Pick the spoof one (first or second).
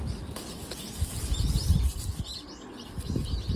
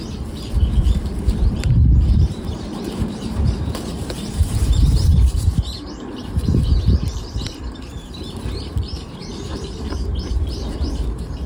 second